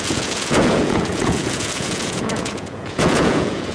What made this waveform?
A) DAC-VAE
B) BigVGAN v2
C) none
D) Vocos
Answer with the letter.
D